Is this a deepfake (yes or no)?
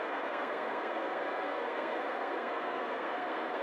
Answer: yes